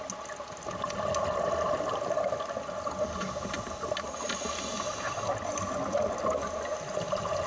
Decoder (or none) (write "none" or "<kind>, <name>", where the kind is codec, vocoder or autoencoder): none